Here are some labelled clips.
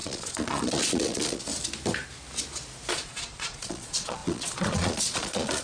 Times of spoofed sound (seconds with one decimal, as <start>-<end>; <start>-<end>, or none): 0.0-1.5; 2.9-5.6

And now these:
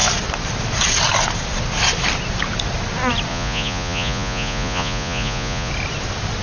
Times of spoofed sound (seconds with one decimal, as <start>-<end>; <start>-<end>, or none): 3.3-5.7

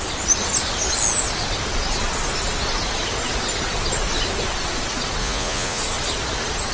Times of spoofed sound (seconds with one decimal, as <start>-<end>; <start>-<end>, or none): 5.2-5.8

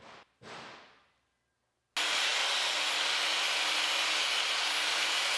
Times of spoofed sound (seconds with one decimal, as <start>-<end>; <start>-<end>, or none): none

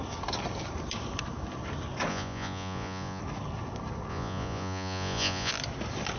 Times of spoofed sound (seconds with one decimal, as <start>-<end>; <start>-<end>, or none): 2.1-3.2; 4.1-5.5